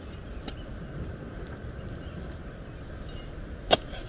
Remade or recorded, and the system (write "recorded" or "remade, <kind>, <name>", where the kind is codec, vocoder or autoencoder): recorded